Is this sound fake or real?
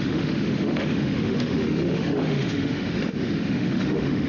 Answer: fake